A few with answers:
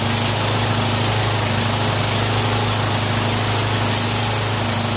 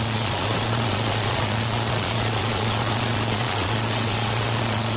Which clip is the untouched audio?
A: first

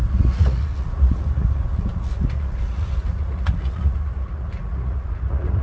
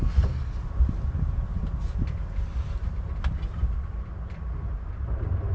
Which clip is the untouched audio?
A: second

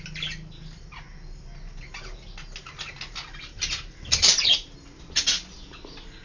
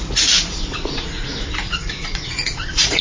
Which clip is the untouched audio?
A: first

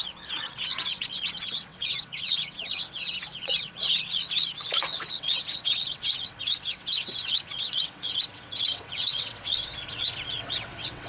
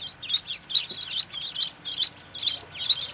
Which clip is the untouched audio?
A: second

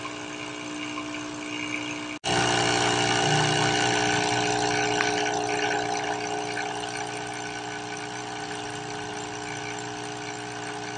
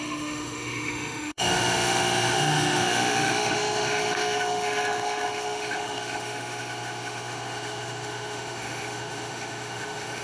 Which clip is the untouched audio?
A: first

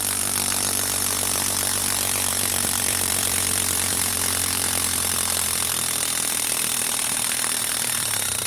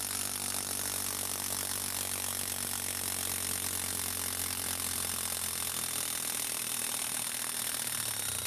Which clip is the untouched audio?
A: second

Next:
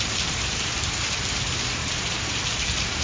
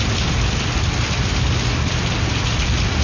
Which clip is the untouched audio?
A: second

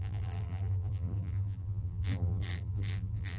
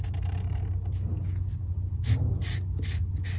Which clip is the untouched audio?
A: second